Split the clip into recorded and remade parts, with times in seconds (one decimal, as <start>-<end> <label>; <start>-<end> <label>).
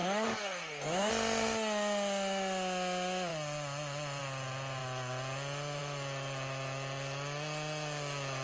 0.0-1.1 remade; 1.1-8.4 recorded